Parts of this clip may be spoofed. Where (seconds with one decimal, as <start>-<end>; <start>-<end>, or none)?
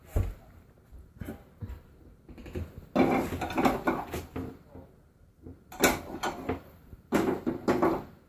none